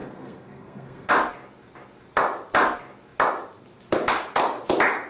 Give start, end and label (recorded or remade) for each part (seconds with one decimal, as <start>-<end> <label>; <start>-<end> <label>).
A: 0.0-1.1 remade; 1.1-5.1 recorded